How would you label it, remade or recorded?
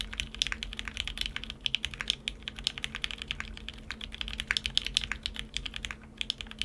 recorded